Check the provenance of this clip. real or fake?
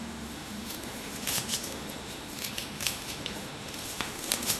fake